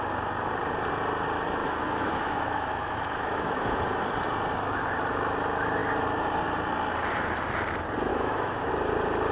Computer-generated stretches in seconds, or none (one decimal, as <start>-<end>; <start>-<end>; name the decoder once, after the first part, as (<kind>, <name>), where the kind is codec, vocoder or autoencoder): 1.6-3.8 (autoencoder, DAC-VAE); 8.1-8.7